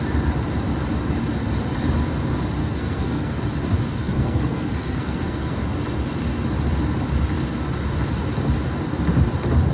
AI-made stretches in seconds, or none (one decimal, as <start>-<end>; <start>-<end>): 2.6-3.4; 4.0-5.6